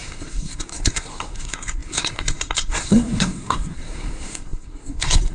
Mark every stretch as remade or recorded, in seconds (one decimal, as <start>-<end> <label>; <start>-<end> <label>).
0.0-5.3 remade